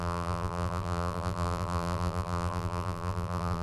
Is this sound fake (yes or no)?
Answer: yes